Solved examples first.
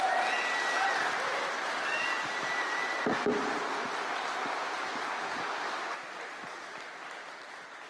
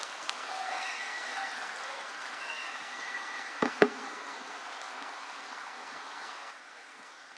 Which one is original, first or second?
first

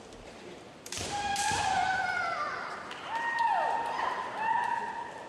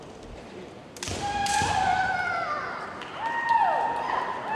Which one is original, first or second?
second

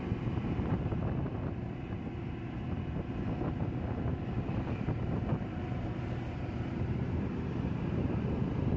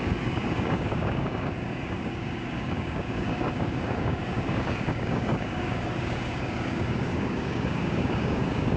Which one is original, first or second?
first